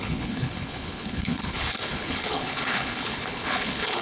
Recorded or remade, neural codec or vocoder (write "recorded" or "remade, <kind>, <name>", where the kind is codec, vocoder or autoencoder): remade, codec, HILCodec